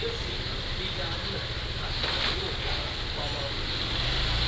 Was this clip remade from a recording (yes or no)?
no